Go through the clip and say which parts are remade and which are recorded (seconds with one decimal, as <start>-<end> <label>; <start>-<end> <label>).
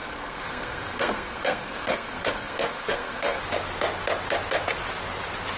0.0-3.4 remade; 3.4-5.6 recorded